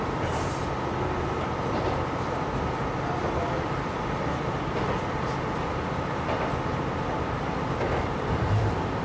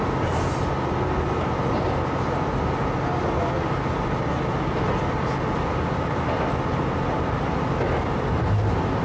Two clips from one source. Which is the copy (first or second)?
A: first